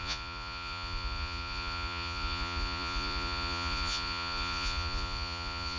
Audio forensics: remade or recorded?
remade